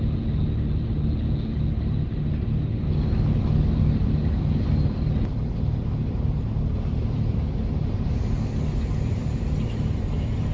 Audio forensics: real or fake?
real